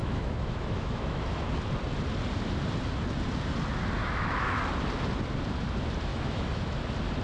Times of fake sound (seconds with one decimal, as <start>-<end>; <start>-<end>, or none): 0.0-1.5; 4.0-4.6; 6.1-6.8

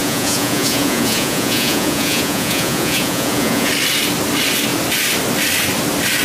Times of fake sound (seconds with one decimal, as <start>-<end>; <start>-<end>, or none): 0.0-3.7

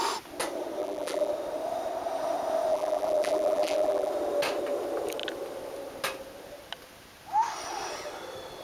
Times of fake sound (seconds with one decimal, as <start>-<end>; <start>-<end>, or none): 0.8-1.3; 2.7-4.1

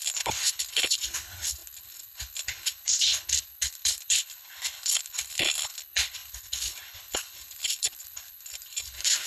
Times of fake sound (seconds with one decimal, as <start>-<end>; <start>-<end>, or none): 0.0-9.3

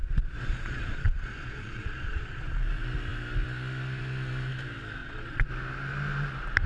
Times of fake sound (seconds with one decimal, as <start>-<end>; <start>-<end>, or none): 0.0-2.5; 5.0-5.5

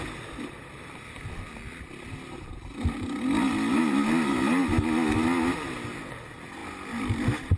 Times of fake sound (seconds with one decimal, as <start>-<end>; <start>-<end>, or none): none

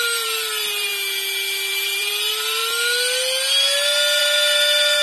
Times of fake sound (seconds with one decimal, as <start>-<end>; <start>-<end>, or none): 0.0-0.9; 1.7-2.6; 4.2-5.0

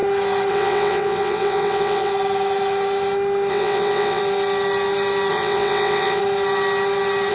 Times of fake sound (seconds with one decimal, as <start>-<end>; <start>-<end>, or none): 0.5-2.1; 3.5-4.2; 5.3-6.2